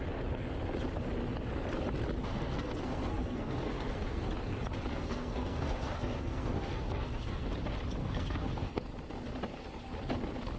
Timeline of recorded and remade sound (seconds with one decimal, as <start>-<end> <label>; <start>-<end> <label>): 0.0-2.2 recorded; 2.2-4.3 remade; 4.3-4.9 recorded; 4.9-7.5 remade; 7.5-8.0 recorded; 8.0-8.8 remade; 8.8-10.6 recorded